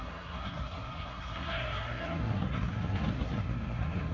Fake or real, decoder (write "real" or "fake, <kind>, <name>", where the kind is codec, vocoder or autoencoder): fake, codec, SNAC